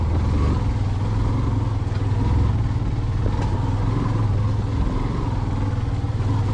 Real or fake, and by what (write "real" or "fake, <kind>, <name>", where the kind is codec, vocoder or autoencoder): real